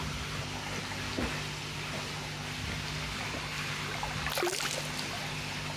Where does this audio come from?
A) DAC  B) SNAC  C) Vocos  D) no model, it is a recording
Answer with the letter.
D